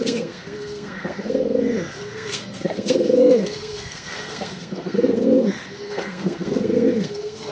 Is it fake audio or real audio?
fake